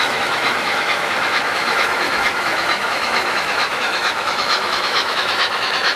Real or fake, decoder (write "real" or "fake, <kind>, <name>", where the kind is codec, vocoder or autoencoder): fake, autoencoder, DAC-VAE